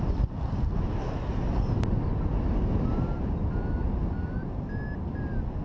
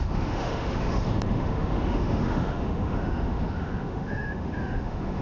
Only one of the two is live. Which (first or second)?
first